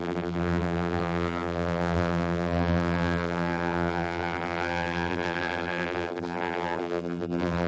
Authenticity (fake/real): fake